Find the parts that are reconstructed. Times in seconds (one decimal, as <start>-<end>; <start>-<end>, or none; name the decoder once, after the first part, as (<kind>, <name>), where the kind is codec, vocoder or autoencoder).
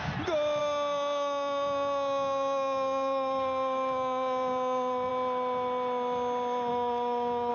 0.6-5.1 (codec, DAC); 6.7-7.5